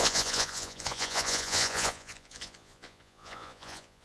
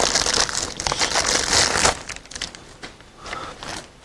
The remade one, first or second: first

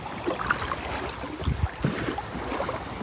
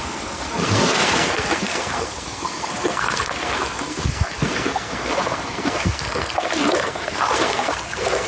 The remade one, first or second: second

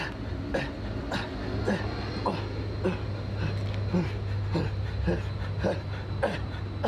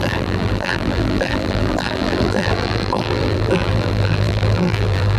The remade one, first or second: second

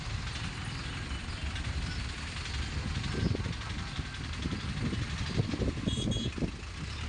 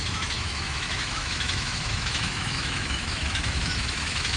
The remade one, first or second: second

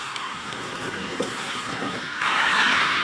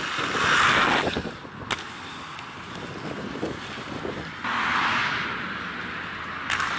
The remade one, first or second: first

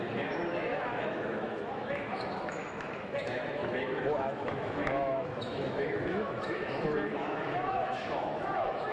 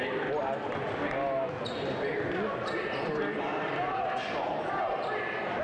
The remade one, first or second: first